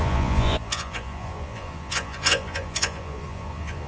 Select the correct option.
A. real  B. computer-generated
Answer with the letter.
B